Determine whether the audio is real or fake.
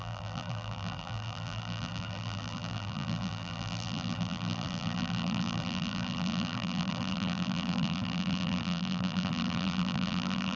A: fake